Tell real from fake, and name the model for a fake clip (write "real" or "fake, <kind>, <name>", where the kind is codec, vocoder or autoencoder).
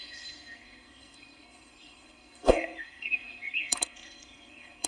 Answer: fake, codec, SNAC